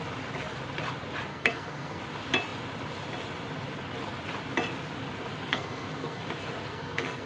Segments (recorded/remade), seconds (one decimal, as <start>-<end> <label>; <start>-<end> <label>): 0.0-1.3 recorded; 1.3-2.0 remade; 2.0-5.5 recorded; 5.5-6.2 remade; 6.2-6.7 recorded; 6.7-7.3 remade